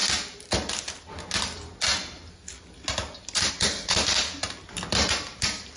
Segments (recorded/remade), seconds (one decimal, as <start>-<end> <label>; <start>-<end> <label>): 0.0-5.8 recorded